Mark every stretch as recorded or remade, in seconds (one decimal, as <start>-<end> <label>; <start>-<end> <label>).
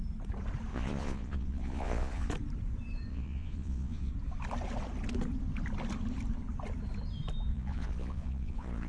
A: 0.0-0.7 recorded; 0.7-2.3 remade; 2.3-3.1 recorded; 3.1-4.1 remade; 4.1-7.5 recorded; 7.5-8.9 remade